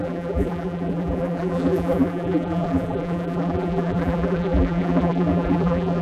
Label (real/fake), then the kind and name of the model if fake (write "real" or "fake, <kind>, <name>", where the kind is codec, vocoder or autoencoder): fake, vocoder, BigVGAN v2